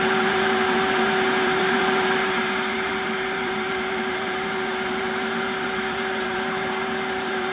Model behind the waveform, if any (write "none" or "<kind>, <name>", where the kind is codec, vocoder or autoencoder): vocoder, BigVGAN v2